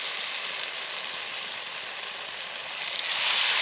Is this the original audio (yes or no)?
yes